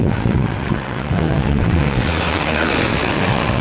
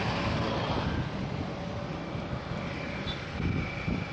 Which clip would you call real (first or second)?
second